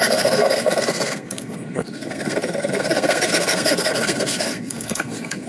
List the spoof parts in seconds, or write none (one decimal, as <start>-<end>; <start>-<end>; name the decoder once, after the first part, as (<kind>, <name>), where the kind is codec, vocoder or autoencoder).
0.0-5.5 (codec, SNAC)